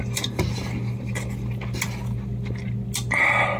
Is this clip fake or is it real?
real